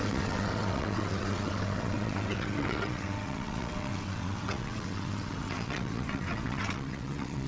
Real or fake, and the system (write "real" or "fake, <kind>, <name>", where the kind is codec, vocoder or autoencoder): fake, vocoder, WaveNeXt